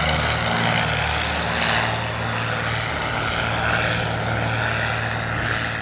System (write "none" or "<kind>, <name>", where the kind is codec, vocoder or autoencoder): none